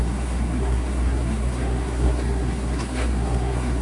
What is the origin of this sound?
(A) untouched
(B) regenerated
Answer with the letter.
B